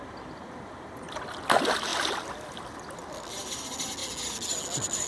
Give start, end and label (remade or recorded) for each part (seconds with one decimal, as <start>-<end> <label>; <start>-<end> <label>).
0.0-1.9 remade; 1.9-3.1 recorded; 3.1-4.0 remade; 4.0-5.1 recorded

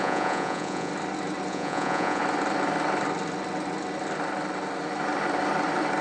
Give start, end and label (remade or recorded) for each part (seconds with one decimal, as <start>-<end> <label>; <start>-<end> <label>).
0.0-0.9 remade; 0.9-1.5 recorded; 1.5-2.2 remade; 2.2-6.0 recorded

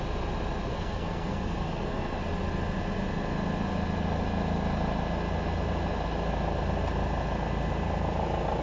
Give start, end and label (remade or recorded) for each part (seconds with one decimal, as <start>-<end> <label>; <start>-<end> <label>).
0.0-0.7 recorded; 0.7-2.2 remade; 2.2-8.6 recorded

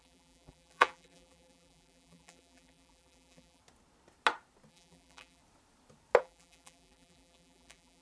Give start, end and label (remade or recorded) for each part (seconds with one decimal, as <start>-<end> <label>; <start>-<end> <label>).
0.0-3.6 remade; 3.6-4.7 recorded; 4.7-5.4 remade; 5.4-6.2 recorded; 6.2-8.0 remade

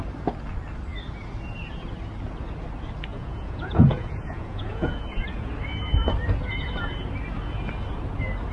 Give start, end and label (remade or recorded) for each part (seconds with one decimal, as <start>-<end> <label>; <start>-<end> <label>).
0.0-3.1 recorded; 3.1-5.5 remade; 5.5-8.5 recorded

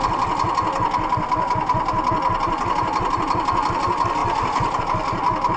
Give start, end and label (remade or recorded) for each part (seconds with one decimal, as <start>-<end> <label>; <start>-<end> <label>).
0.0-5.6 recorded

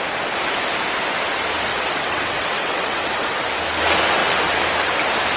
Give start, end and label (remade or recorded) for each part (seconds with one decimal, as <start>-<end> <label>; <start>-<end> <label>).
0.0-1.7 recorded; 1.7-3.6 remade; 3.6-5.4 recorded